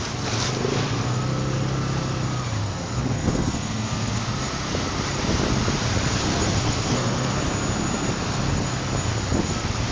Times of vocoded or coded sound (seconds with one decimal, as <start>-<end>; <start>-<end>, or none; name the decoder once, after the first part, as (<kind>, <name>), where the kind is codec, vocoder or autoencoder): 2.6-4.2 (codec, SNAC); 6.3-7.4